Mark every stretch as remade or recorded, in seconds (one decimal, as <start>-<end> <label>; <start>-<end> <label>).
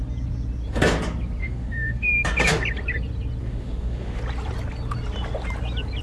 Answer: 0.0-1.4 recorded; 1.4-2.1 remade; 2.1-3.4 recorded; 3.4-4.2 remade; 4.2-6.0 recorded